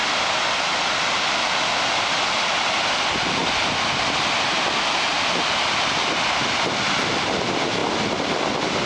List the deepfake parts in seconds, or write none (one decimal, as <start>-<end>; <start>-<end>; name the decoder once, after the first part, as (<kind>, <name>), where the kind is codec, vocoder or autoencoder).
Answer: none